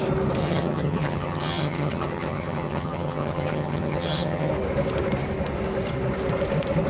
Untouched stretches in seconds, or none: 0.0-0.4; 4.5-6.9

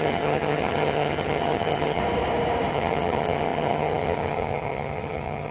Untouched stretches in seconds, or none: 2.0-2.7

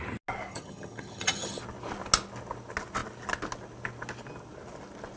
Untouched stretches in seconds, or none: 0.0-0.5; 1.6-5.2

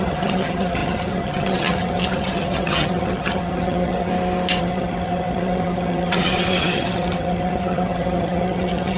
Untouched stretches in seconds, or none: 4.1-4.6

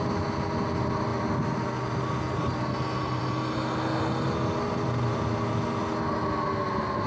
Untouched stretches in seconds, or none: 0.0-7.1

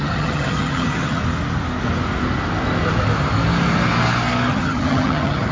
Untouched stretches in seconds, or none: 1.2-4.5

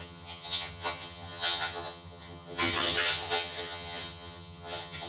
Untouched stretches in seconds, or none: none

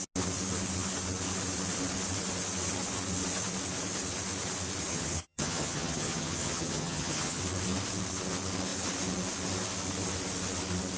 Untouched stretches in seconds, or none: 0.0-4.9; 7.4-11.0